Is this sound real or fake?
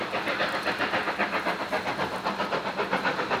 real